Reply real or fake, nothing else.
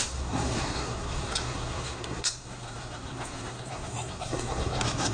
fake